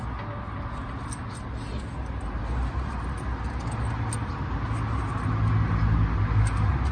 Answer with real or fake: real